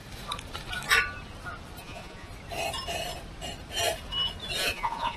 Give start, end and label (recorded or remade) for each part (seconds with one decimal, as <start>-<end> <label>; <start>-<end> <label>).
0.0-1.8 recorded; 1.8-2.3 remade; 2.3-4.6 recorded; 4.6-5.2 remade